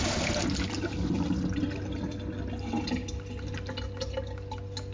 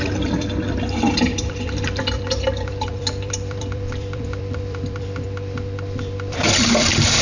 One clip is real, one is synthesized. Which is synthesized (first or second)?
second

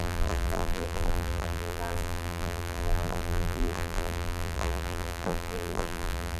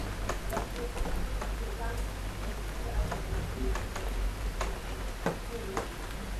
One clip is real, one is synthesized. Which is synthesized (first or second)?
first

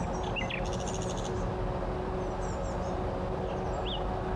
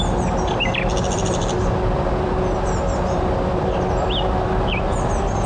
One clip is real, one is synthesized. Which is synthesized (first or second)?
second